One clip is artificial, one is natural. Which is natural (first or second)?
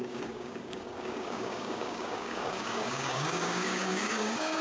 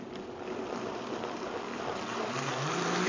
second